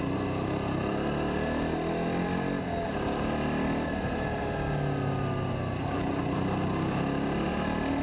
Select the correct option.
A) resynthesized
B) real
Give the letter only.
B